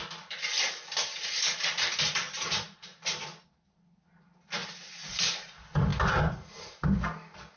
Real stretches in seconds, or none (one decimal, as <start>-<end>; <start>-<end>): 0.0-2.9; 3.4-5.9; 6.9-7.6